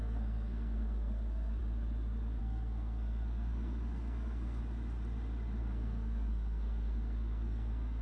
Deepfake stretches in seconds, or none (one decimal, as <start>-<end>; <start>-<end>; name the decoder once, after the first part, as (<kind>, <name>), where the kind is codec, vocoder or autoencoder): 0.0-1.6 (codec, SNAC); 2.4-4.6; 5.6-8.0